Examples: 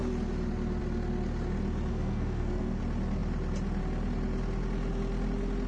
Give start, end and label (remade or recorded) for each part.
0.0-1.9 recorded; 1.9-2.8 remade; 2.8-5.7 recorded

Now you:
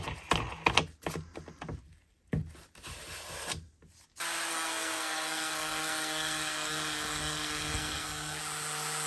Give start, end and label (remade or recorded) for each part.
0.0-4.5 recorded; 4.5-8.4 remade; 8.4-9.1 recorded

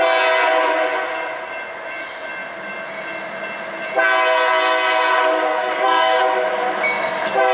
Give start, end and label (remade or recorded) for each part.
0.0-5.5 recorded; 5.5-6.2 remade; 6.2-7.5 recorded

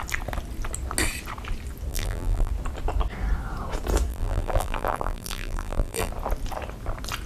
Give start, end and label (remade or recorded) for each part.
0.0-1.9 recorded; 1.9-2.5 remade; 2.5-4.1 recorded; 4.1-6.1 remade; 6.1-7.3 recorded